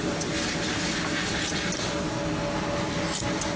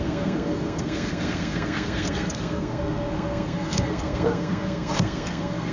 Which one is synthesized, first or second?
second